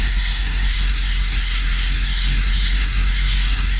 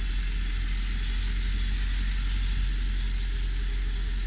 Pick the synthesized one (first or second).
first